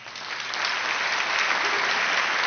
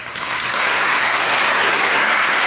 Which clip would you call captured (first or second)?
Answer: first